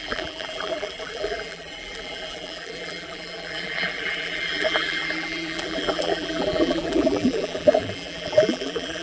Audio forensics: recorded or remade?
remade